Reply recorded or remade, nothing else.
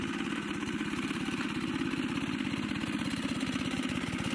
recorded